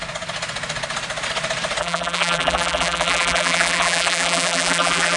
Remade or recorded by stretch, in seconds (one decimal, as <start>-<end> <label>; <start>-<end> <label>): 0.0-1.8 recorded; 1.8-5.2 remade